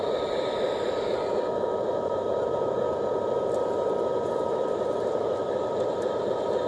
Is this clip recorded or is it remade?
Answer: recorded